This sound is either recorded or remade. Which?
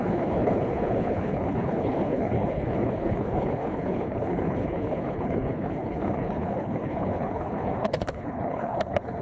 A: remade